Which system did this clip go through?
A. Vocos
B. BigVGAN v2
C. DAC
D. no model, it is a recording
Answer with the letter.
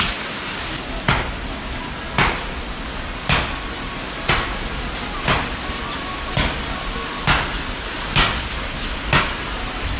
D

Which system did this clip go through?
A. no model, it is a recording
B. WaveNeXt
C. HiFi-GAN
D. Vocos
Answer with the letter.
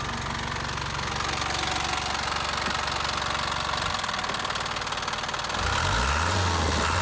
A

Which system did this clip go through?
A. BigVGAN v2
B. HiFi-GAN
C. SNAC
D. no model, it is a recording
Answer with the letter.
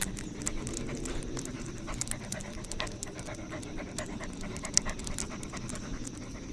D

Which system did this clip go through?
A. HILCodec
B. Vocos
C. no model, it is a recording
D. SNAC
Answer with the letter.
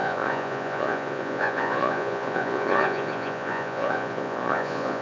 B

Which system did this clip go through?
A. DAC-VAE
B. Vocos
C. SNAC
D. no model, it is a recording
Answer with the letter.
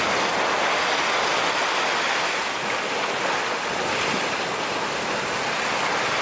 D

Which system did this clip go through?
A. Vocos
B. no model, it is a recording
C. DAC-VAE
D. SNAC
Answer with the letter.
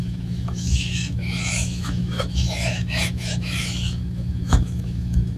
C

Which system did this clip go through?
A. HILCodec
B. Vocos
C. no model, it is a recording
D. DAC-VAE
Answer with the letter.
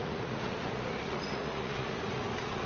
B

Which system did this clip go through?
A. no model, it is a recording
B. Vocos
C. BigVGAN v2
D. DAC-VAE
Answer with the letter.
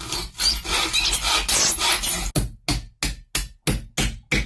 A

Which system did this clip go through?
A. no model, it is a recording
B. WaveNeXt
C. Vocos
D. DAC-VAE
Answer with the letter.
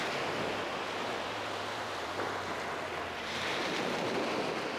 A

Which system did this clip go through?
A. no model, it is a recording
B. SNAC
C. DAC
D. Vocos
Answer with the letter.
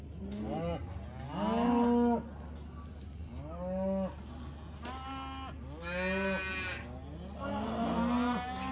A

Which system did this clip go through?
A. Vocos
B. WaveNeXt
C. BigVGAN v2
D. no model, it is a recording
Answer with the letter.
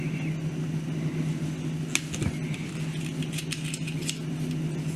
D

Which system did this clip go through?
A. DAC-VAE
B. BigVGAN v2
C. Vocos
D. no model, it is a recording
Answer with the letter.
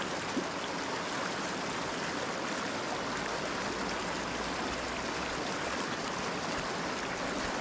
D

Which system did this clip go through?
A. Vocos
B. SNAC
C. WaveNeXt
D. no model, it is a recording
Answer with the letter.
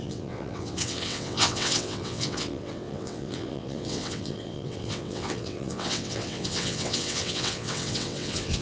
C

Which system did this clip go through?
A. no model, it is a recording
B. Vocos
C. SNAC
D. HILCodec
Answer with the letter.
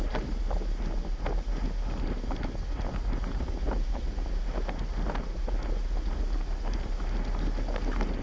A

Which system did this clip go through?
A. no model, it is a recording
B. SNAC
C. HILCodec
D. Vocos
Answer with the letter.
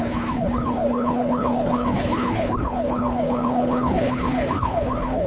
C